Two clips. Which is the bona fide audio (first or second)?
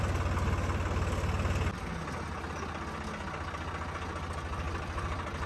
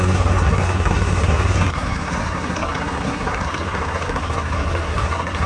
first